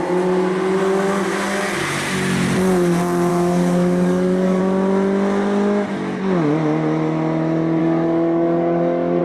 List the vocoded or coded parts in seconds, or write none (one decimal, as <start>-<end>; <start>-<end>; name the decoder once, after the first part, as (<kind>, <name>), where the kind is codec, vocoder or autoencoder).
3.3-4.6 (codec, DAC); 7.8-9.2